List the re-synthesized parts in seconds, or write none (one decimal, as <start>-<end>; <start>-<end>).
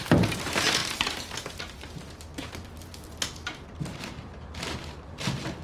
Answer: none